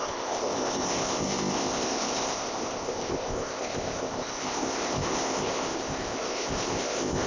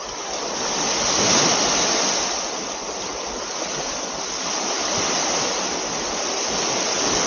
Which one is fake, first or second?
first